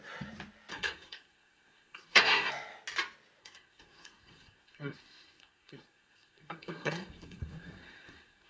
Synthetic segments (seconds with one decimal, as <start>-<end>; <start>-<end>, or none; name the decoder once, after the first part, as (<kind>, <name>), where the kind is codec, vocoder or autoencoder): 0.7-2.5 (codec, SNAC); 3.4-8.5